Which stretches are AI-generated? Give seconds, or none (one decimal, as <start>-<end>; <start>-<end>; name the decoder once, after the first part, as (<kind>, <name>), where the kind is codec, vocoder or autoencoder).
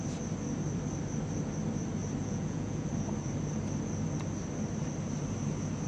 2.2-2.9 (vocoder, Vocos)